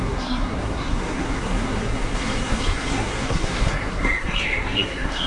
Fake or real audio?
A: fake